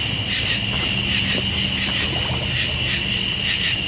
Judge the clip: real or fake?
real